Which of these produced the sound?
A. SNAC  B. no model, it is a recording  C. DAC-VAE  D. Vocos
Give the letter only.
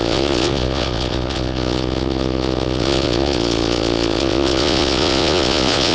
D